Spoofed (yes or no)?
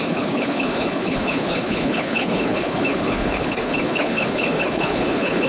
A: yes